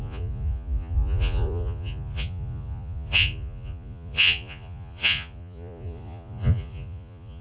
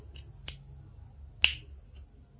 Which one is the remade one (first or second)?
first